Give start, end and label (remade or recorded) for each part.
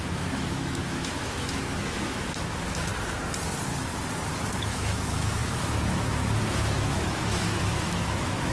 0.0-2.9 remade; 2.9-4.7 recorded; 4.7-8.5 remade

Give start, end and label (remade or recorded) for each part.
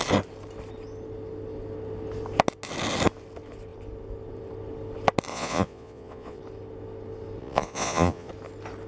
0.0-5.3 recorded; 5.3-6.4 remade; 6.4-7.4 recorded; 7.4-8.3 remade; 8.3-8.9 recorded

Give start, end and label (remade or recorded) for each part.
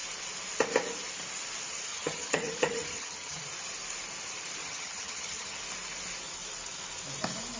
0.0-1.9 recorded; 1.9-3.4 remade; 3.4-4.6 recorded; 4.6-5.6 remade; 5.6-7.6 recorded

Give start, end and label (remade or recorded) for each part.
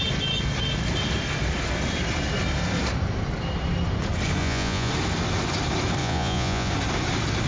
0.0-4.4 recorded; 4.4-4.9 remade; 4.9-6.0 recorded; 6.0-6.7 remade; 6.7-7.5 recorded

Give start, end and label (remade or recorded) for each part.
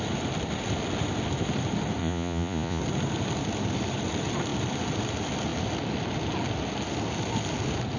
0.0-2.0 recorded; 2.0-2.8 remade; 2.8-8.0 recorded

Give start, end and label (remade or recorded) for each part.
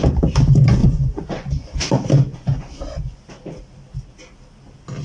0.0-0.8 recorded; 0.8-1.8 remade; 1.8-2.3 recorded; 2.3-3.2 remade; 3.2-5.0 recorded